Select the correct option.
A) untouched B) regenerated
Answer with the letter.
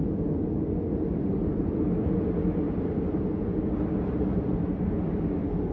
A